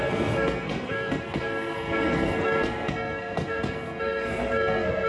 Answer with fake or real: fake